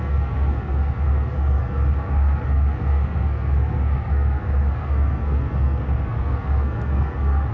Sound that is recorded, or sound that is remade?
remade